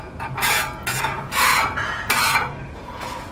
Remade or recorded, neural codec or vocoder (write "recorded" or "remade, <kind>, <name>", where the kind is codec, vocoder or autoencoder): remade, vocoder, Vocos